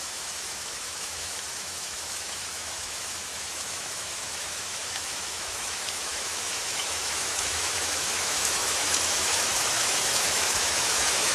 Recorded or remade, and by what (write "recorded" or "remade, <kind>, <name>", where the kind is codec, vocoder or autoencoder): remade, autoencoder, DAC-VAE